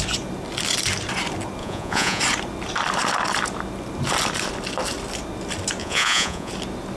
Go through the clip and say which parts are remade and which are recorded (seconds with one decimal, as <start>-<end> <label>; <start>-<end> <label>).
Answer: 0.0-1.6 recorded; 1.6-2.2 remade; 2.2-5.8 recorded; 5.8-6.5 remade; 6.5-7.0 recorded